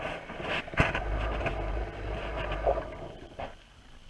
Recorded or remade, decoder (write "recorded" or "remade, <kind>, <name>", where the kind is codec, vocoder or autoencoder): recorded